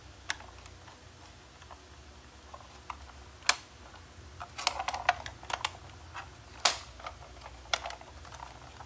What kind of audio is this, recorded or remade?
recorded